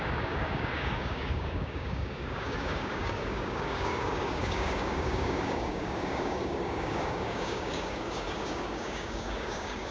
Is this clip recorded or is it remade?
remade